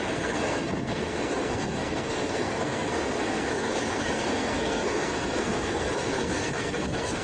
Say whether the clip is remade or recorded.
remade